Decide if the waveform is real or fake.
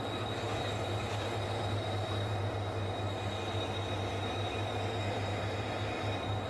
real